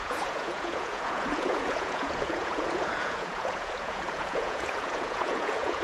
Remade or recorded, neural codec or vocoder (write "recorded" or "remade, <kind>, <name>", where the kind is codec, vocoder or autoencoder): remade, vocoder, Vocos